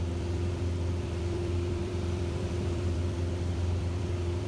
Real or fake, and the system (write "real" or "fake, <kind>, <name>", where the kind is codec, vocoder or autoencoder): fake, vocoder, BigVGAN v2